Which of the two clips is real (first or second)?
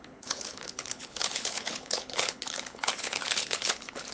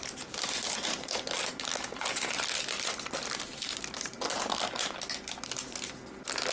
second